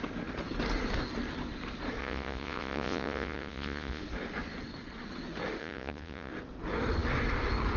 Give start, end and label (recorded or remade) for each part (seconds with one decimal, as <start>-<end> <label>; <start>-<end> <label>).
0.0-2.0 recorded; 2.0-4.0 remade; 4.0-5.6 recorded; 5.6-6.3 remade; 6.3-7.8 recorded